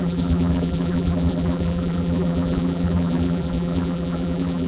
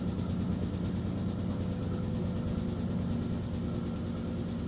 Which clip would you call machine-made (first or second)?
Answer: first